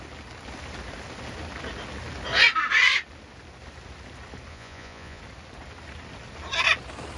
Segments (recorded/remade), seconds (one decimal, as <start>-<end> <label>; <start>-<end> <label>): 0.0-4.5 recorded; 4.5-5.2 remade; 5.2-7.2 recorded